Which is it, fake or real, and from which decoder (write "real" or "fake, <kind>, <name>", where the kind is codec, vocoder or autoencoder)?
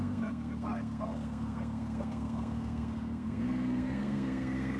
fake, codec, SNAC